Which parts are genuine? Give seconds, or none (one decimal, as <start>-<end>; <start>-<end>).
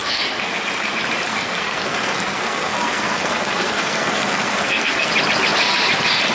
0.6-1.3; 5.1-6.3